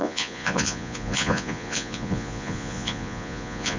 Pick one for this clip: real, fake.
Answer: fake